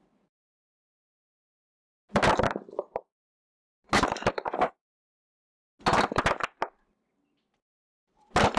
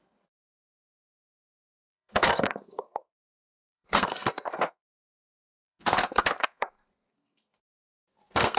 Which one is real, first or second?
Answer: first